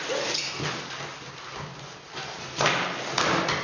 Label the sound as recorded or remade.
recorded